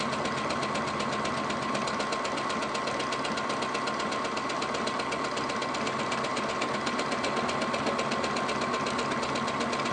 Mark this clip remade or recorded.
recorded